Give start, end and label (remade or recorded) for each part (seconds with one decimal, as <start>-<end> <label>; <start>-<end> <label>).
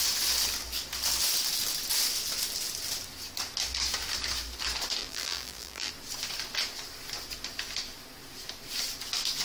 0.0-5.0 recorded; 5.0-5.9 remade; 5.9-9.4 recorded